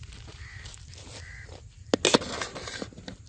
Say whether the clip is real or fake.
real